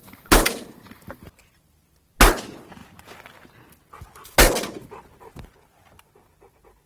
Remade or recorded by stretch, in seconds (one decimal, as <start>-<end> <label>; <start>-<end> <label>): 0.0-6.9 recorded